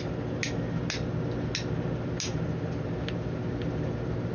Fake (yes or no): no